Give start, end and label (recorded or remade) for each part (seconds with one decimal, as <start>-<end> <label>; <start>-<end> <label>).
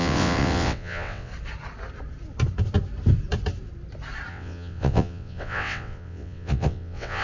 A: 0.0-1.3 remade; 1.3-4.3 recorded; 4.3-7.2 remade